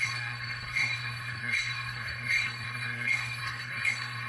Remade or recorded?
remade